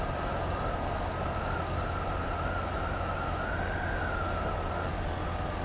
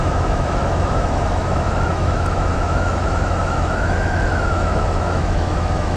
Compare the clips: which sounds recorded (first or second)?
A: first